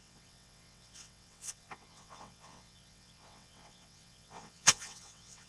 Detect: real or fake fake